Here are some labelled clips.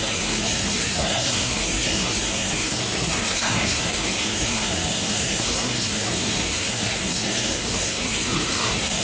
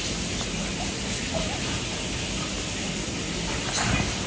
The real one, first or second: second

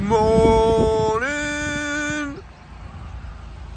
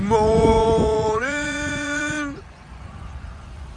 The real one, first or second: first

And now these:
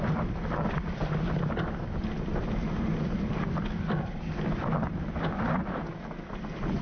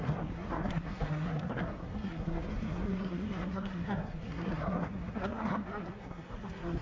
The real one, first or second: first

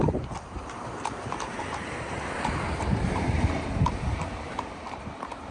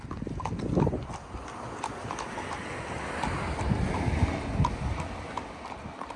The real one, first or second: second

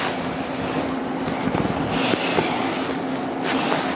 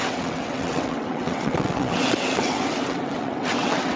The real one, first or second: first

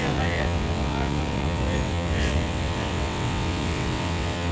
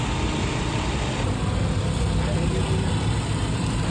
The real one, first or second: second